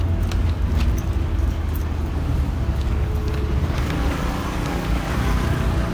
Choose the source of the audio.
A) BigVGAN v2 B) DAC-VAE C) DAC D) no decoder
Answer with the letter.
C